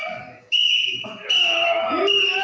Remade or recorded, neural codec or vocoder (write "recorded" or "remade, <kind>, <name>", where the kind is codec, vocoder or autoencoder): remade, codec, DAC